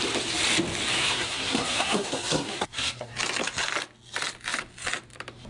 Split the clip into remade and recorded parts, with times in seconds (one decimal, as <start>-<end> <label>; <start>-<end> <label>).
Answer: 0.0-1.0 recorded; 1.0-3.1 remade; 3.1-5.5 recorded